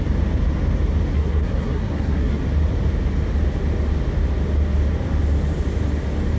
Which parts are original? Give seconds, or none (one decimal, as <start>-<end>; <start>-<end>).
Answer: 0.0-1.1; 2.4-6.4